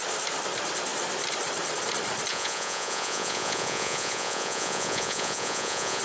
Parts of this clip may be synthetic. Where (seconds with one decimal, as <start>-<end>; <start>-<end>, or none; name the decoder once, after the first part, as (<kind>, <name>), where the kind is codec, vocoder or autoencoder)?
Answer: 2.3-6.0 (vocoder, Vocos)